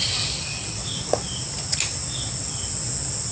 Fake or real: real